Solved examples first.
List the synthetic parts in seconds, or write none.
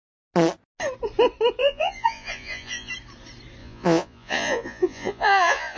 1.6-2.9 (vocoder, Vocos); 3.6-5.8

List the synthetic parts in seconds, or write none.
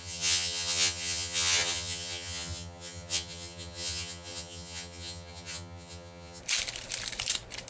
0.0-6.4 (vocoder, HiFi-GAN)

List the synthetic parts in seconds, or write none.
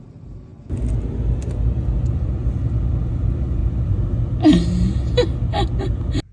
none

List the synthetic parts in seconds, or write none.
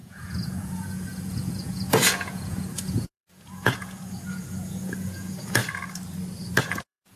0.0-5.6 (vocoder, Vocos); 6.6-7.2